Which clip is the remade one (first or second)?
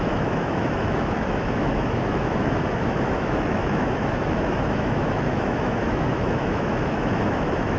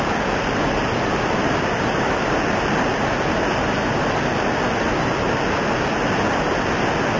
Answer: first